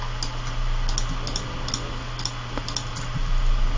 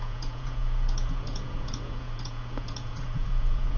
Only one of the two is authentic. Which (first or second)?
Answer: first